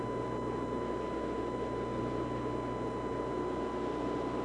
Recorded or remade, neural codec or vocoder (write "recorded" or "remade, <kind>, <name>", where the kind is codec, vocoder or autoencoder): recorded